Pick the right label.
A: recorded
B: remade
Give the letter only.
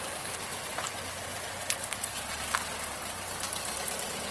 A